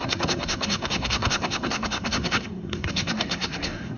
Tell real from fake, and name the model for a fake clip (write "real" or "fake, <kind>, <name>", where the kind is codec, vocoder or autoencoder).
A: fake, codec, SNAC